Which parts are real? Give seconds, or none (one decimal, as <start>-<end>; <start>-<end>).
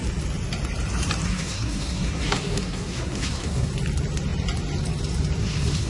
0.0-1.3; 3.7-5.4